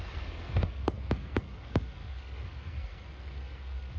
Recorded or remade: remade